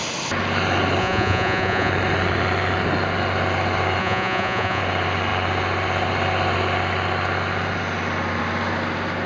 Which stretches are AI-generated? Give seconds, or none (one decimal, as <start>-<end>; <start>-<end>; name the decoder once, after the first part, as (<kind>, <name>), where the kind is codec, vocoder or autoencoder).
1.0-1.9 (vocoder, Vocos); 4.0-4.8